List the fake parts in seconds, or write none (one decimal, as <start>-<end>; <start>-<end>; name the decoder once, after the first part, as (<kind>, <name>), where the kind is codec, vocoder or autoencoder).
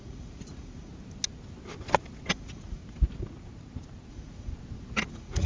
0.0-0.9 (vocoder, Vocos); 2.3-2.8; 4.1-4.5; 5.1-5.5